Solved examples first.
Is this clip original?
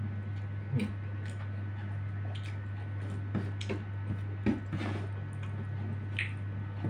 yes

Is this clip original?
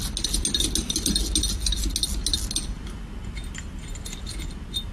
yes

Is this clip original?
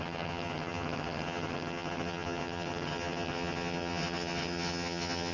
no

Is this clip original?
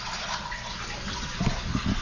yes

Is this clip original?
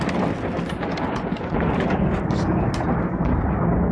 yes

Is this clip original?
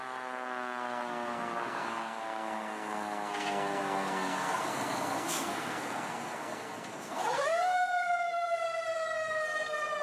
no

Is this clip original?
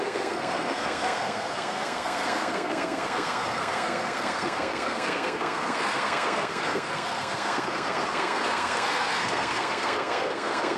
no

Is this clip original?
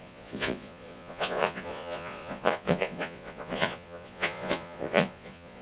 no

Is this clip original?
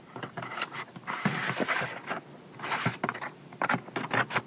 yes